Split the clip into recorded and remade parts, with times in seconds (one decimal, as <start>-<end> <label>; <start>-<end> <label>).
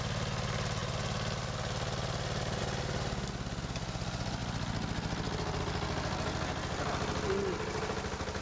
0.0-8.4 recorded